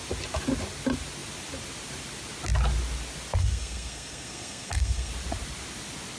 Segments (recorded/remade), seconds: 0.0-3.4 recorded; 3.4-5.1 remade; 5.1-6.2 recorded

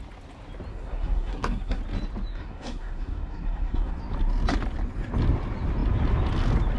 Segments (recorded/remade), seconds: 0.0-0.7 recorded; 0.7-1.8 remade; 1.8-2.3 recorded; 2.3-4.0 remade; 4.0-6.8 recorded

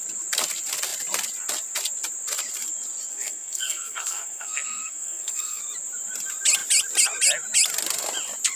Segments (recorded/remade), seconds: 0.0-3.1 recorded; 3.1-5.6 remade; 5.6-8.6 recorded

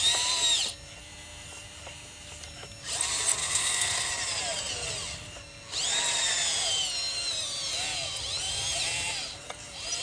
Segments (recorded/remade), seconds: 0.0-3.4 recorded; 3.4-4.1 remade; 4.1-10.0 recorded